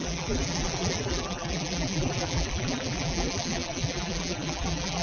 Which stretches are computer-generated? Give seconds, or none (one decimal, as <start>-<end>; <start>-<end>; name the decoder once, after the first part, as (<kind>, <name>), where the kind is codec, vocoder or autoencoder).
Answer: 0.0-5.0 (vocoder, BigVGAN v2)